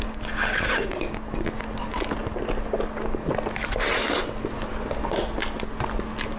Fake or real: real